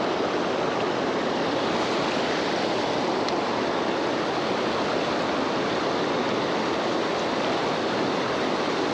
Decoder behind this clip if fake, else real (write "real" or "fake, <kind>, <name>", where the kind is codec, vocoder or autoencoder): real